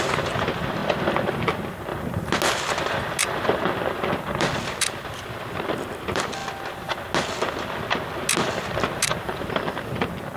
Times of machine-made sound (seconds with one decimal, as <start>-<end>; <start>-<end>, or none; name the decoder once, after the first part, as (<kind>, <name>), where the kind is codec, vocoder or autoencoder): 0.0-1.9 (vocoder, BigVGAN v2); 4.4-6.4; 9.2-10.4